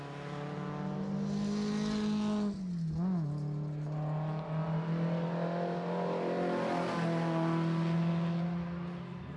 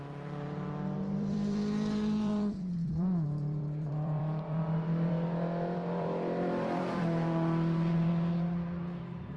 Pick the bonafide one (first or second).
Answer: first